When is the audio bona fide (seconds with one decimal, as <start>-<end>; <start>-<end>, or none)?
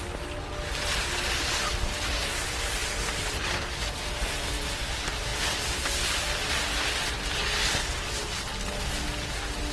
0.0-9.7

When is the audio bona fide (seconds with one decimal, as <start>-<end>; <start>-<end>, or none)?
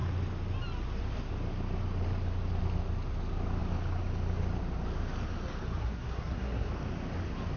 0.0-5.8; 6.7-7.6